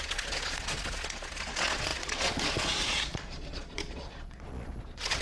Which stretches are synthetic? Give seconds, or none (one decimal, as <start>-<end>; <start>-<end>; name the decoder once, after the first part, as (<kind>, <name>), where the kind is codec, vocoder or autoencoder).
0.0-5.2 (vocoder, Vocos)